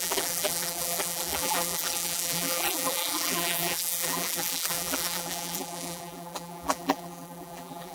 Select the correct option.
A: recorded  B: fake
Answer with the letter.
B